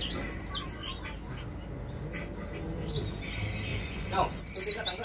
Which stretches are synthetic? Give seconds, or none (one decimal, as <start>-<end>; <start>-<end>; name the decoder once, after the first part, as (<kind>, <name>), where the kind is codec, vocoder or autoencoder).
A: 3.7-4.4 (vocoder, Vocos)